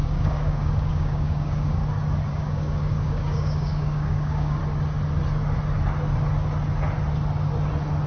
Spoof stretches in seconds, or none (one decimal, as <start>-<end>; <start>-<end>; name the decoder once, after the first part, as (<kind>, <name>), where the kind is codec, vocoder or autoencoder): 0.0-1.8 (codec, DAC); 2.3-4.6